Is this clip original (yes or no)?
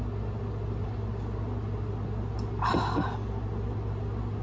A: yes